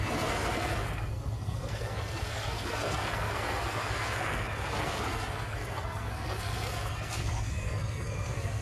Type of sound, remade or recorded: remade